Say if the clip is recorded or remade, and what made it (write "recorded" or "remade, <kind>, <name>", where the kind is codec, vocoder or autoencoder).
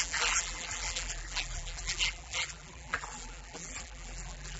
remade, vocoder, BigVGAN v2